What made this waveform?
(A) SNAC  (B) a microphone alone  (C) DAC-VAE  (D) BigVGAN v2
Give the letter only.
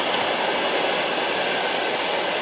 B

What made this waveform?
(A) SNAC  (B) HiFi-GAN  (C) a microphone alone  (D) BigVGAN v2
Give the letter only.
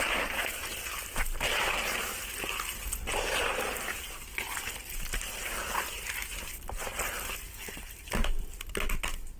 C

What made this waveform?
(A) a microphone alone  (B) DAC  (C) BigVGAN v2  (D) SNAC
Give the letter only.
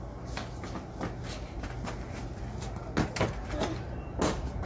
A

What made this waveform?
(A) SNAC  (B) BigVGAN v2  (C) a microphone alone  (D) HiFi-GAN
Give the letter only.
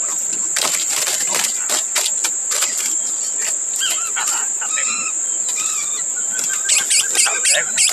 C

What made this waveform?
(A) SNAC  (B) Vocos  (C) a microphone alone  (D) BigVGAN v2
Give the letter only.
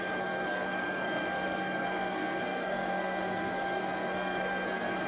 A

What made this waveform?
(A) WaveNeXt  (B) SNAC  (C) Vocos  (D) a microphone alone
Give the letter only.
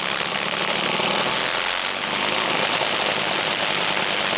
D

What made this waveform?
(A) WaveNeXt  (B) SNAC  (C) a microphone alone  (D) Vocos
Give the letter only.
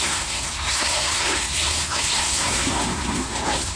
B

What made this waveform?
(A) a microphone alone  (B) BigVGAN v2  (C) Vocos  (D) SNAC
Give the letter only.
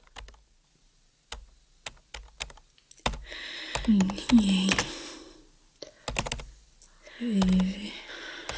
A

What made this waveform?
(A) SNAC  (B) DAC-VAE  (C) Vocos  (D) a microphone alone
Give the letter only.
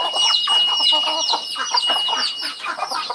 D